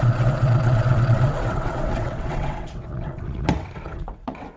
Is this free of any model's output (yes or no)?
no